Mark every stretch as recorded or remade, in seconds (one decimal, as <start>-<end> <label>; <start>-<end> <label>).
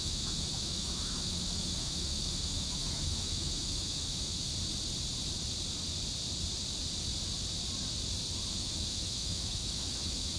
0.0-4.5 remade; 4.5-8.5 recorded; 8.5-10.4 remade